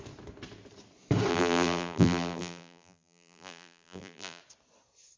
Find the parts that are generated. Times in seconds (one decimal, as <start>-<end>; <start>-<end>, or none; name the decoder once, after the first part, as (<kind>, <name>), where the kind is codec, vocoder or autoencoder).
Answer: 1.3-4.4 (vocoder, BigVGAN v2)